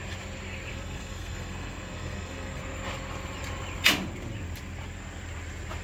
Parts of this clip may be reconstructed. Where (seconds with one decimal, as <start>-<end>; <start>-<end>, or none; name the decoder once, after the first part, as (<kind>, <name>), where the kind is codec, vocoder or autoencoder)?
0.7-2.6 (codec, SNAC)